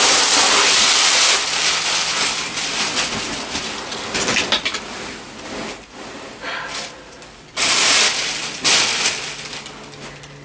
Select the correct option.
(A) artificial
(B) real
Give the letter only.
B